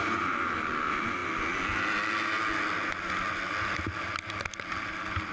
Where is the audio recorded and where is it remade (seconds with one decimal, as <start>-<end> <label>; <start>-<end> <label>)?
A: 0.0-5.3 recorded